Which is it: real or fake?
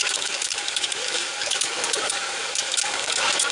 fake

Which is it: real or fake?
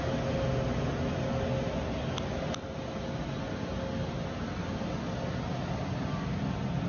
real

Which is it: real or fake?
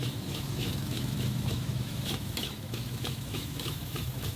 fake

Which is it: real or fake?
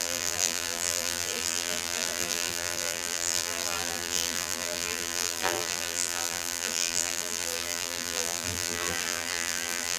fake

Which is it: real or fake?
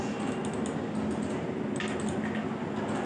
real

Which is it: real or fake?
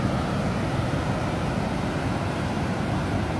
real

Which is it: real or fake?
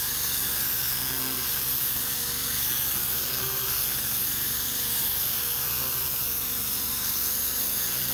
fake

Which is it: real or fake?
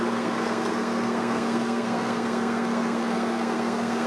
fake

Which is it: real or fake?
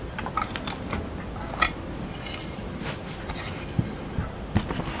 real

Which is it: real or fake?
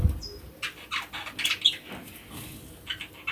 real